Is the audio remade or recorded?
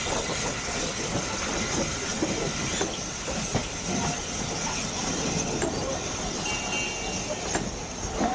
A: recorded